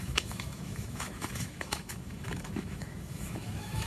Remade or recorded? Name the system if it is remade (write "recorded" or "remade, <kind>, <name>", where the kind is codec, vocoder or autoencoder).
remade, autoencoder, DAC-VAE